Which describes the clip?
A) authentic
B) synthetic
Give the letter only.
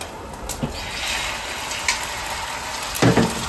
A